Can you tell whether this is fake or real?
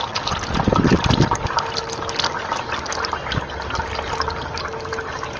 real